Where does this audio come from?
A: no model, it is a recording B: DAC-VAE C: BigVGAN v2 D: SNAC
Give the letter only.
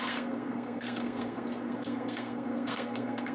D